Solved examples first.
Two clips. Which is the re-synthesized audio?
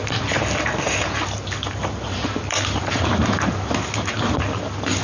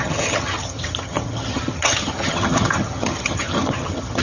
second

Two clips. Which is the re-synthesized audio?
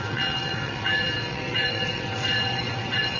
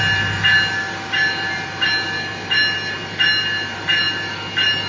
first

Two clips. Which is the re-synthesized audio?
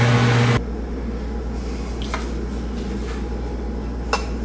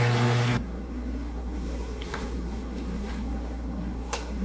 second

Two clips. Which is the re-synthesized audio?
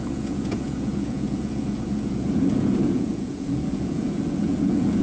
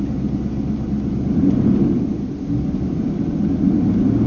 first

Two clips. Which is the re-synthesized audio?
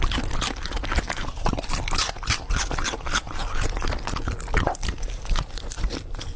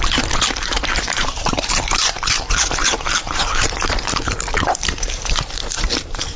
second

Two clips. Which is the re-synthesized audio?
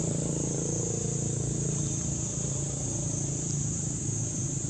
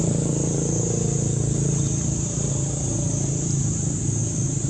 first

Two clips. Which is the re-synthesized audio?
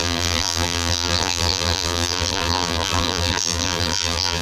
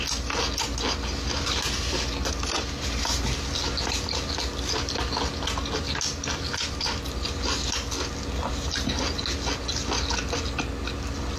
first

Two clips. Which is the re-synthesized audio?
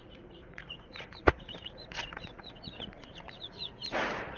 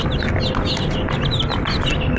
first